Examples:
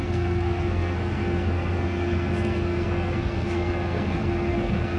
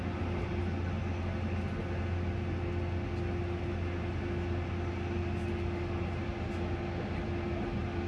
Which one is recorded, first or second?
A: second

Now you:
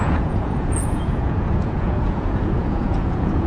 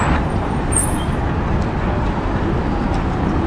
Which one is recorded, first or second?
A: second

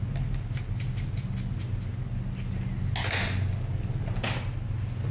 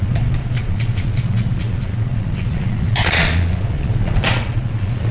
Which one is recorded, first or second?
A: first